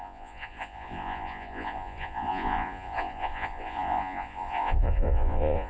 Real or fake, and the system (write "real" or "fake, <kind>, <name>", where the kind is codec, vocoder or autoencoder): fake, vocoder, Vocos